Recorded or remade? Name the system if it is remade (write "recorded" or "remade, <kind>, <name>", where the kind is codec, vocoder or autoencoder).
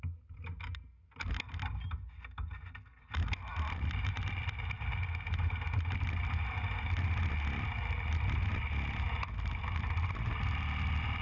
recorded